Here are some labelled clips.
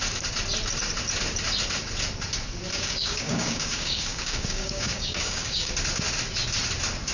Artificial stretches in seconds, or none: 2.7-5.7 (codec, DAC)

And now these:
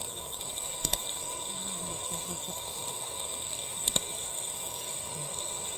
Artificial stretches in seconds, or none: 0.0-5.8 (codec, SNAC)

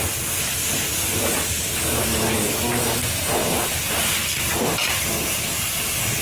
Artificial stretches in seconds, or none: none

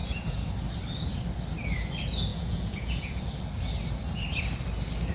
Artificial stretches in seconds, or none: 0.0-0.5 (vocoder, Vocos); 2.3-3.2

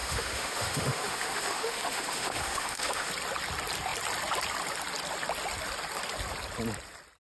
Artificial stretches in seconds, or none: 0.0-3.1 (autoencoder, DAC-VAE)

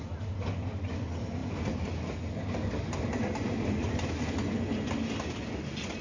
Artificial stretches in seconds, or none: none

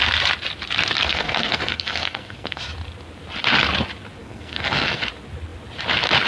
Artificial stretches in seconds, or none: 1.0-2.6 (codec, SNAC); 4.2-5.0